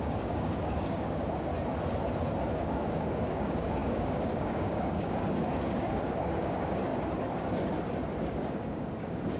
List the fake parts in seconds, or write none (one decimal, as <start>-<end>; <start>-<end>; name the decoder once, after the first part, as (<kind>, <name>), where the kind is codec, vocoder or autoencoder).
0.0-1.5 (codec, DAC); 2.5-6.9; 8.2-9.4